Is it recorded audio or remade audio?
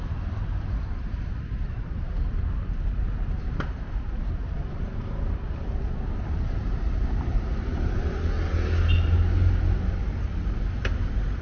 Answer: recorded